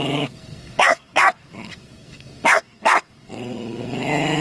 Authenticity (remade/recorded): remade